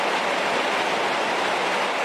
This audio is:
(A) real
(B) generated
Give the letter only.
A